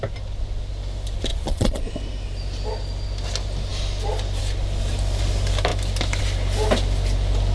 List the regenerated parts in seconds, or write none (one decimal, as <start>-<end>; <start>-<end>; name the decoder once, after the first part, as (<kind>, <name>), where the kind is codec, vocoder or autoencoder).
1.3-1.8 (vocoder, Vocos)